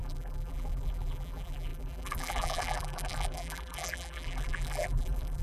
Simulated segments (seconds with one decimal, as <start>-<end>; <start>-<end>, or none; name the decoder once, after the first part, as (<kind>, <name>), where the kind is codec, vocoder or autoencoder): 0.0-5.4 (vocoder, BigVGAN v2)